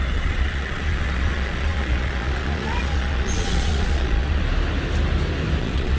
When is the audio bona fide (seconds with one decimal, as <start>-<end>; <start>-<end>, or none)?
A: 4.4-5.6

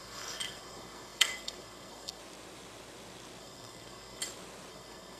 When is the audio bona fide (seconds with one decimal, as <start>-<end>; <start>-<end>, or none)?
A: 2.2-3.4; 4.2-4.7